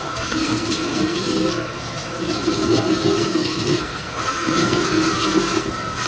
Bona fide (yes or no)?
no